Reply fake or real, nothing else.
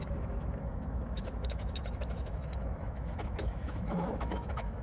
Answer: fake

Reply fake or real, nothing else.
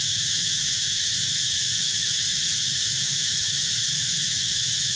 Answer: fake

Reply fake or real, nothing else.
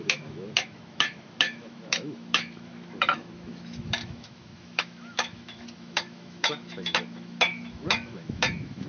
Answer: fake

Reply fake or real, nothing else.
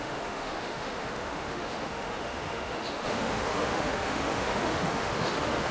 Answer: fake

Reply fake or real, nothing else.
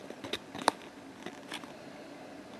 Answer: real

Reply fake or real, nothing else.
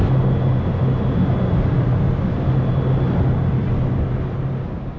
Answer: real